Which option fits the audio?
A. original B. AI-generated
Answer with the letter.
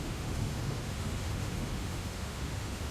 B